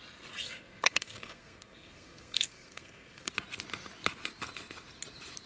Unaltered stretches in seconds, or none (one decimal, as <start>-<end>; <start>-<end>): 0.0-0.4; 3.3-5.5